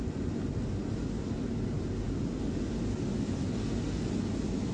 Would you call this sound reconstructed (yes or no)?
no